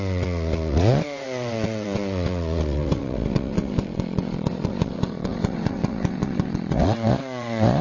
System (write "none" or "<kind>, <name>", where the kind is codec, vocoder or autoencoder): vocoder, WaveNeXt